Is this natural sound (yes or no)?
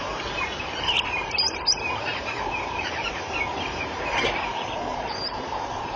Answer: no